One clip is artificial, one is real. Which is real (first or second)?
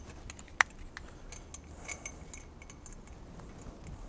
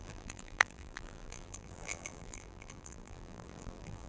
first